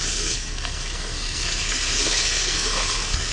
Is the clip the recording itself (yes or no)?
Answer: no